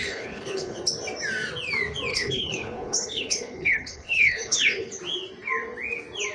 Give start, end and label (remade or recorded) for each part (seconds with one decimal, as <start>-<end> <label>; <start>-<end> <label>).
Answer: 0.0-0.8 remade; 0.8-2.1 recorded; 2.1-4.9 remade; 4.9-6.3 recorded